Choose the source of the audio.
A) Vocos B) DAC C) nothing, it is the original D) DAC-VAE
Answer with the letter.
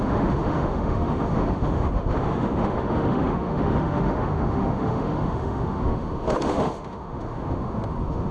D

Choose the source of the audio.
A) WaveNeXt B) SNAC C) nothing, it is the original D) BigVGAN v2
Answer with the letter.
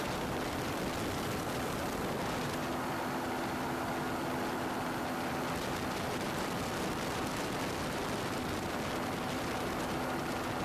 C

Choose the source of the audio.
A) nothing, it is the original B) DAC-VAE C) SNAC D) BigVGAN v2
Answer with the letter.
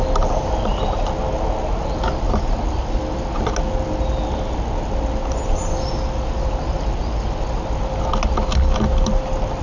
A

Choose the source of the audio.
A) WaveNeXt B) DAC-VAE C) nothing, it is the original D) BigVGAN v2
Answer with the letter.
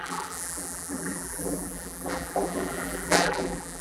D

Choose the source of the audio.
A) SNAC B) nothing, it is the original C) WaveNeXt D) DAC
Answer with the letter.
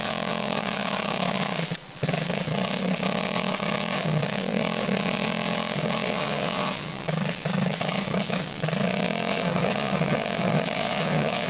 C